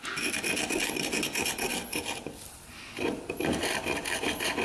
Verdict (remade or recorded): recorded